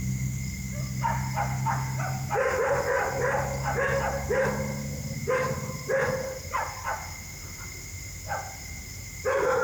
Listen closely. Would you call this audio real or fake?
real